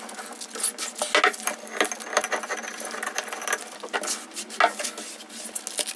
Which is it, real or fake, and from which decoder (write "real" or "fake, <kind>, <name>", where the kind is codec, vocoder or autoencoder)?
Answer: real